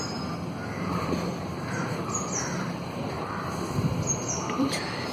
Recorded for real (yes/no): no